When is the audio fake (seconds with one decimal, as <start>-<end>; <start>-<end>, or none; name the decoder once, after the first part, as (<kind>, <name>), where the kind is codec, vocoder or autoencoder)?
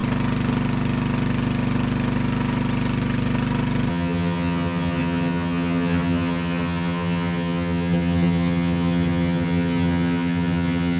3.9-11.0 (vocoder, HiFi-GAN)